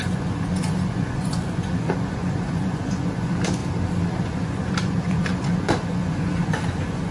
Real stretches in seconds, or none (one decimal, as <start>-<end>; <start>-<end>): 3.6-4.2